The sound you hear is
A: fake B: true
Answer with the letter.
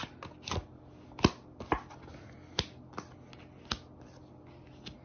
B